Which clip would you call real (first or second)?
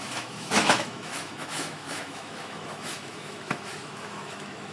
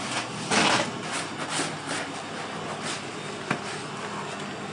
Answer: second